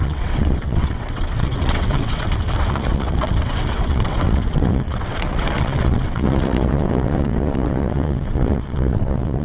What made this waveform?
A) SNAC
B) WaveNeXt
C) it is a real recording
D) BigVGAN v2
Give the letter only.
B